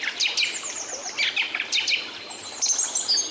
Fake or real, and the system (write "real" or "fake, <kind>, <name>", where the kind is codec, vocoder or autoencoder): real